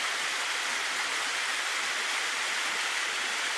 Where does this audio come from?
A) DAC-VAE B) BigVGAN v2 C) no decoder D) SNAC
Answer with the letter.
C